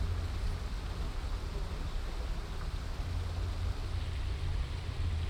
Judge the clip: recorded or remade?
recorded